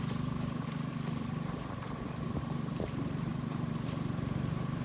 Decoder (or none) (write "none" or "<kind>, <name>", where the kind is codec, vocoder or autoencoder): vocoder, BigVGAN v2